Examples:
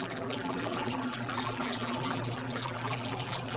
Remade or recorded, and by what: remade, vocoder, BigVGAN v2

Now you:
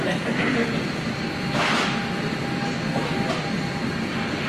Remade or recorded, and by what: recorded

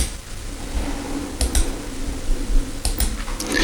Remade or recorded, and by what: recorded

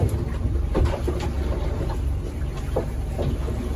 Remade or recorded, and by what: recorded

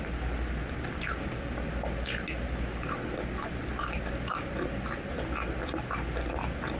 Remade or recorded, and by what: recorded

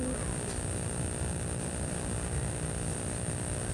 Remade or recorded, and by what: remade, vocoder, BigVGAN v2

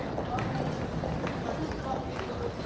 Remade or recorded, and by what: recorded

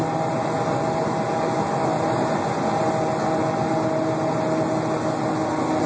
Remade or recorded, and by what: recorded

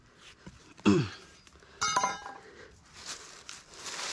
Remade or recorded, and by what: remade, vocoder, BigVGAN v2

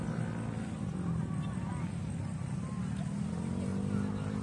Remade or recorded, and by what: recorded